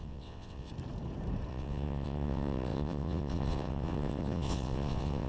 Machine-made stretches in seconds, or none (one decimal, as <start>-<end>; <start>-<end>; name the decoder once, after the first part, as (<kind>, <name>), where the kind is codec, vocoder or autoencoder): 0.0-0.7 (vocoder, WaveNeXt); 1.5-5.3

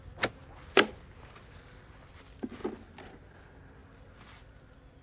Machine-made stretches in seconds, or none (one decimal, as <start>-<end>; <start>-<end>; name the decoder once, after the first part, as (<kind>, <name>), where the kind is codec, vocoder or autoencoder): none

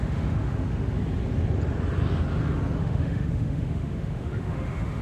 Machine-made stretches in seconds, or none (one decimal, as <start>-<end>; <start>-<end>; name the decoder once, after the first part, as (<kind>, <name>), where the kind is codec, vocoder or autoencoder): 0.0-1.0 (autoencoder, DAC-VAE); 2.8-5.0

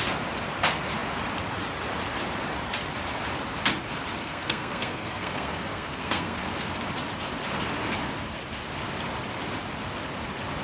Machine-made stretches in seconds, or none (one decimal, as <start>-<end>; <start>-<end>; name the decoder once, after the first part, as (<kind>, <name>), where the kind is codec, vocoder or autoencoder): 4.2-6.7 (codec, SNAC)

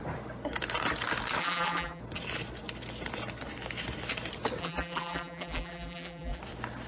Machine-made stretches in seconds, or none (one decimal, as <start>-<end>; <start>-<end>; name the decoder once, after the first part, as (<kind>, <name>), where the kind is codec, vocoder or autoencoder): 1.4-2.0 (vocoder, BigVGAN v2); 4.6-6.4

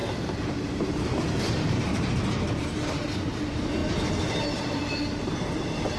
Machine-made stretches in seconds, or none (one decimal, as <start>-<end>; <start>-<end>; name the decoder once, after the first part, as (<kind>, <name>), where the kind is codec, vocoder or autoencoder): 1.2-3.8 (vocoder, BigVGAN v2); 4.4-6.0

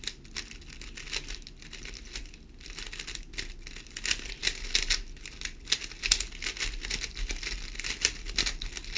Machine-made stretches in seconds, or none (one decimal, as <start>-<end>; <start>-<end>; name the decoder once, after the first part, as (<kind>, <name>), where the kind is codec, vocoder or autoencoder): none